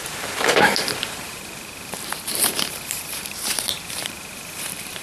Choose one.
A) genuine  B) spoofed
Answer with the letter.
B